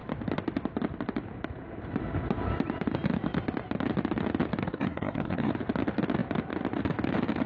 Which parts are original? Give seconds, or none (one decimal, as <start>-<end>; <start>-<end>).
0.0-4.6; 5.5-7.5